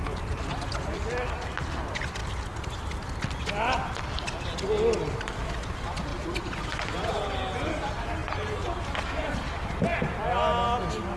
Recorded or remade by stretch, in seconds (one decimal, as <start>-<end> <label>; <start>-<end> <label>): 0.0-11.2 recorded